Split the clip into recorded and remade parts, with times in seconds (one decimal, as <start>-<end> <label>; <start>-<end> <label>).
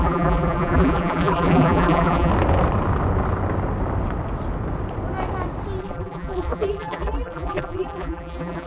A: 0.0-2.3 remade; 2.3-5.8 recorded; 5.8-8.7 remade